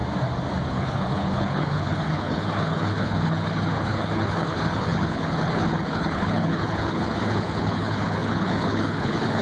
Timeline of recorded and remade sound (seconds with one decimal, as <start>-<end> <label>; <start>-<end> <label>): 0.0-0.7 recorded; 0.7-9.4 remade